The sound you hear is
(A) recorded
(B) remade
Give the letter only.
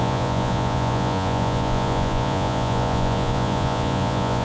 B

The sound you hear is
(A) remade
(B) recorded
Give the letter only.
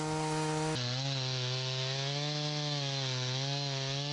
B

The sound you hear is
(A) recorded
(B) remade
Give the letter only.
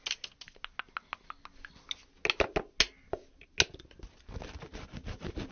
A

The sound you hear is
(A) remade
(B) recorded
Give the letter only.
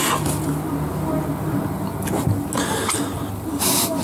B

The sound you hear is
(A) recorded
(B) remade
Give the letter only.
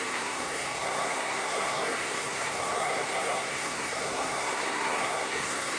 B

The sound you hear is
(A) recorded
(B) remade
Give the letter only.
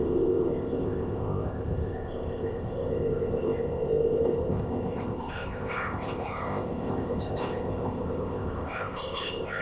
B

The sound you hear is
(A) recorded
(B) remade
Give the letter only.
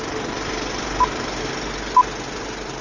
A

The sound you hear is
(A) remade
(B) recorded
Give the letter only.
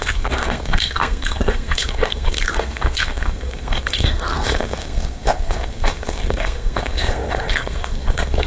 A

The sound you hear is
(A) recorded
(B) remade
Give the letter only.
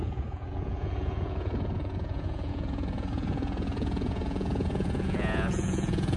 B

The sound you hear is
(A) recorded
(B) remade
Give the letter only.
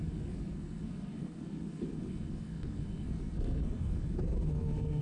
B